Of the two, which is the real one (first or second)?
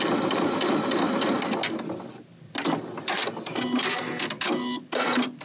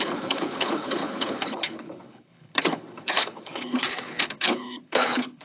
first